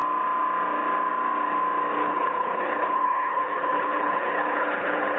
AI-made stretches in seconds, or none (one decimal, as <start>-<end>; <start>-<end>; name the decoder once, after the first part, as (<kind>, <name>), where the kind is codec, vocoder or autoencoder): 2.0-5.2 (codec, HILCodec)

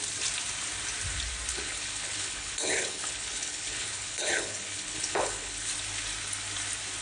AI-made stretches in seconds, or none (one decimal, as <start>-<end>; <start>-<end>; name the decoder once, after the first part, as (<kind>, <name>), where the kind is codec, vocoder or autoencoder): 1.5-5.7 (codec, HILCodec)

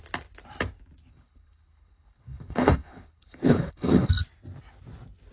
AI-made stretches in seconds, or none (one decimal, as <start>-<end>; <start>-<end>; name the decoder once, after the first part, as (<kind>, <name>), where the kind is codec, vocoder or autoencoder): 1.1-4.1 (codec, HILCodec)

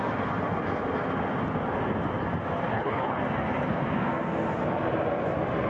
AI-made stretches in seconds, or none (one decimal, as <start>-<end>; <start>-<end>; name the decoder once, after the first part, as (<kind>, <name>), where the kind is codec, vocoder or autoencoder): 2.7-3.2 (codec, HILCodec)